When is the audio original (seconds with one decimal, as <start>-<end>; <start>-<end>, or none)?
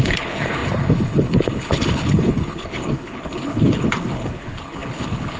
none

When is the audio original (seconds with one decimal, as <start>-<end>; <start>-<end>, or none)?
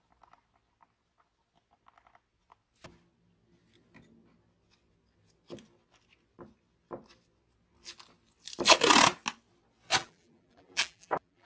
0.0-10.0